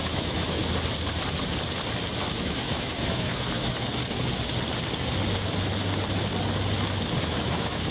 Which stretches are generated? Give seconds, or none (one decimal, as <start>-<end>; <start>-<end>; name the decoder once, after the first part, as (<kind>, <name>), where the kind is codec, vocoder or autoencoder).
0.0-0.6 (autoencoder, DAC-VAE); 2.4-4.0; 7.2-7.9